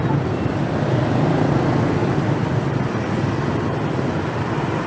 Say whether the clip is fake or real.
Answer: real